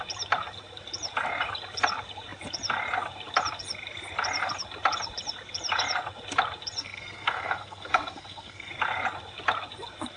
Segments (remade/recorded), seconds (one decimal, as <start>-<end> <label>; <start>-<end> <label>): 0.0-6.8 recorded; 6.8-8.7 remade; 8.7-10.2 recorded